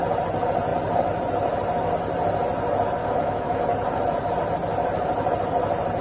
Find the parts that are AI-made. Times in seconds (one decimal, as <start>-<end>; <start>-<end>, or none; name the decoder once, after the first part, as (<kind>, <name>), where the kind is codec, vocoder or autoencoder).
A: 3.0-3.6 (autoencoder, DAC-VAE)